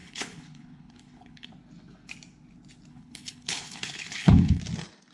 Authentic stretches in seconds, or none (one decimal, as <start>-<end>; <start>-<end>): 1.5-2.9; 4.6-5.1